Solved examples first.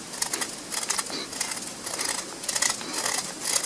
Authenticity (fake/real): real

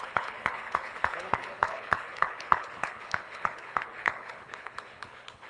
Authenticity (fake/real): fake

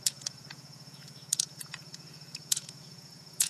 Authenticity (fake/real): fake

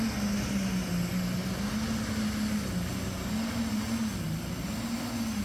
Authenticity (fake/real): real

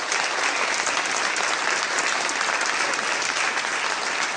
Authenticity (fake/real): real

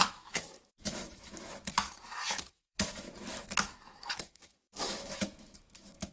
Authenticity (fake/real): fake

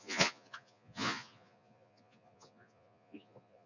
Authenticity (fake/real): fake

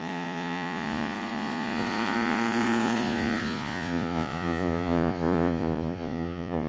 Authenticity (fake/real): fake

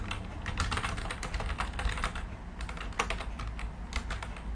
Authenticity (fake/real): real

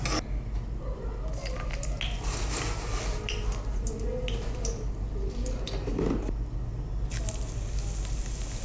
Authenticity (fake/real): real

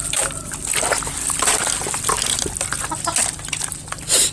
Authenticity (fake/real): real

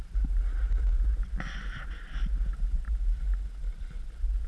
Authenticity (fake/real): real